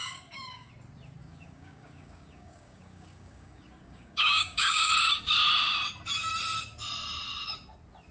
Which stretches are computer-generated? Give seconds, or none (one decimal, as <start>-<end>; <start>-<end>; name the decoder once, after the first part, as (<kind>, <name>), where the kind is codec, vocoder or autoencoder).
0.0-0.7 (codec, DAC); 1.2-4.9